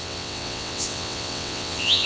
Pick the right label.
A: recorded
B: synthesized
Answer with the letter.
B